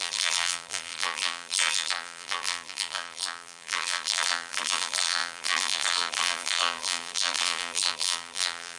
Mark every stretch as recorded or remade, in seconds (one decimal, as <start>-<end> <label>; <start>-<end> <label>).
0.0-8.8 remade